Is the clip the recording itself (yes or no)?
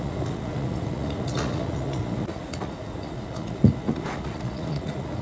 no